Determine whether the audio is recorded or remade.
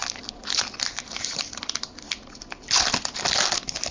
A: recorded